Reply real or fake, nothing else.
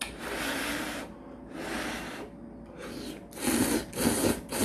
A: real